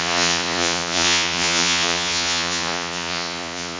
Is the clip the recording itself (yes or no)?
no